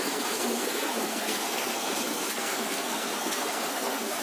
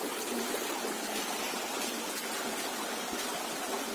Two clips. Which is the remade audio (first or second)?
first